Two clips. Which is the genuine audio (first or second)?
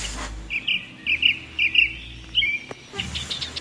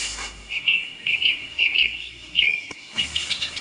first